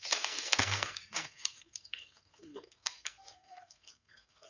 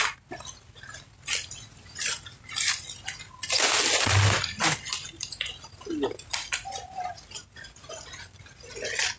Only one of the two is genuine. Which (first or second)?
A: second